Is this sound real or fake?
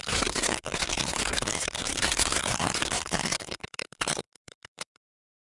fake